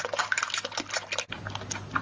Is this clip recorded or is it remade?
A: recorded